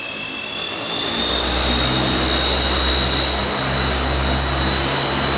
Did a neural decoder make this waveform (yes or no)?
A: no